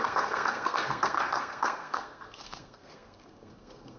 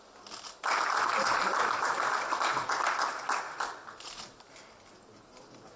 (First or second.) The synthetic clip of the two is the first